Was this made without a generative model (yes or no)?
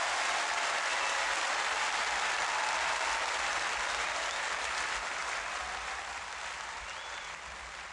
yes